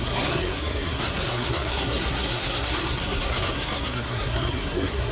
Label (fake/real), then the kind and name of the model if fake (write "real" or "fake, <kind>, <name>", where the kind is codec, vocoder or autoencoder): fake, codec, SNAC